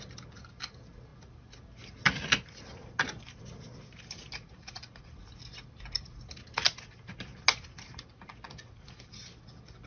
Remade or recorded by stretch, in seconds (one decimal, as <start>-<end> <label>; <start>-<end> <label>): 0.0-9.9 recorded